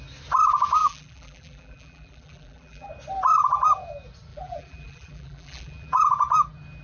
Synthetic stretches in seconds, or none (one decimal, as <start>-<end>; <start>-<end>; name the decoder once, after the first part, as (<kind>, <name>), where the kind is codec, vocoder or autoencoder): 0.8-2.9 (vocoder, BigVGAN v2); 4.3-6.0